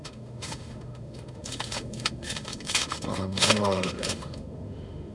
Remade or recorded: remade